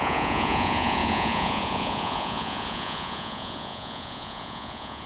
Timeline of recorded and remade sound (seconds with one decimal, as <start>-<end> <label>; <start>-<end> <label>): 0.0-5.1 remade